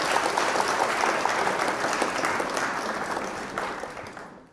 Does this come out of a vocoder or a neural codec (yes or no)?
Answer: no